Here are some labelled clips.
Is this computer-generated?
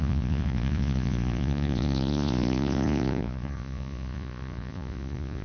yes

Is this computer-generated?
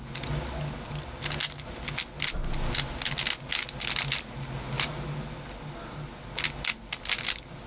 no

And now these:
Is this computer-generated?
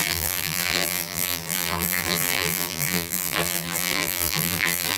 yes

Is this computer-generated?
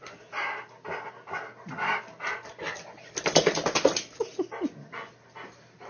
no